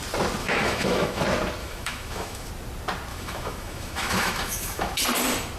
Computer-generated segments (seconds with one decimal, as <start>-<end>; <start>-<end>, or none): 0.4-1.2; 1.6-2.5; 3.1-5.0